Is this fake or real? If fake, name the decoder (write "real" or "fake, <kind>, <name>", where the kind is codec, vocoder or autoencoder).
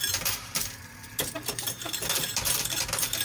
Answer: fake, vocoder, BigVGAN v2